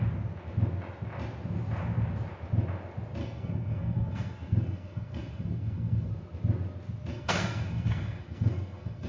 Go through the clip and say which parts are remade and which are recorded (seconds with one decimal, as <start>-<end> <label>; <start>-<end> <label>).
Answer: 0.0-3.2 recorded; 3.2-6.1 remade; 6.1-7.1 recorded; 7.1-9.1 remade